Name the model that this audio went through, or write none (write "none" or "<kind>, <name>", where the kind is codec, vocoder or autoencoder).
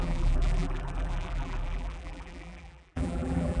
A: vocoder, BigVGAN v2